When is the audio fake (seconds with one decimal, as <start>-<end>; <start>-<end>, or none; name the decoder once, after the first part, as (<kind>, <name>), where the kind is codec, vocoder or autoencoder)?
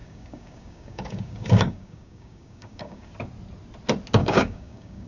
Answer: 0.0-3.1 (codec, DAC); 4.2-5.1